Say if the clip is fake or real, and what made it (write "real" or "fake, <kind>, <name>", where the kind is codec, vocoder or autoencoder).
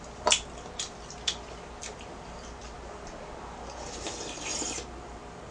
real